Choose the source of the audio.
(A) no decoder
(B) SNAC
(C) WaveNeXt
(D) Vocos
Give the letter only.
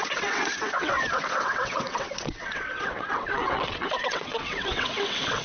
C